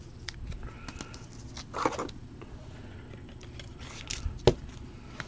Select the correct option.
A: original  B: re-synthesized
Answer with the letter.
A